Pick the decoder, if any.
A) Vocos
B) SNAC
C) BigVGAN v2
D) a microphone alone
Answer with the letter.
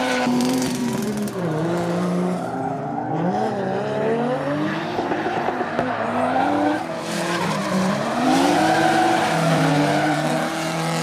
C